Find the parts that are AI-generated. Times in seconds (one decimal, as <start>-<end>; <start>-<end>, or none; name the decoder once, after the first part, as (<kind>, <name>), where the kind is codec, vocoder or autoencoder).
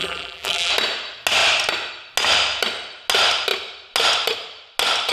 0.0-0.7 (vocoder, BigVGAN v2)